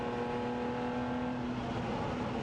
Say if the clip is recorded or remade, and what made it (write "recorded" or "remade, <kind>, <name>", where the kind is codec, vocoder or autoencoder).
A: recorded